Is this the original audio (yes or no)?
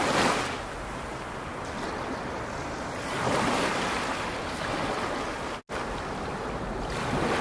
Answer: yes